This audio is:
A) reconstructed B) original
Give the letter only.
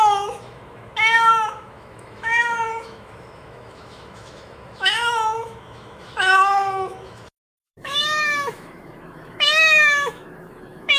A